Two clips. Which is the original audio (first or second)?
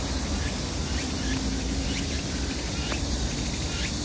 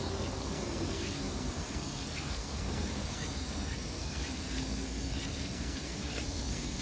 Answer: first